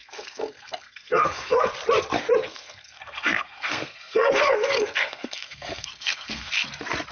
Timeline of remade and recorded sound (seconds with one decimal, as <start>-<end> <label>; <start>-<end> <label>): 0.0-1.7 remade; 1.7-2.4 recorded; 2.4-6.5 remade; 6.5-7.1 recorded